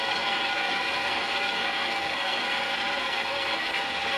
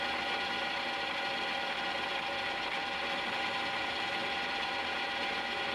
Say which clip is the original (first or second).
second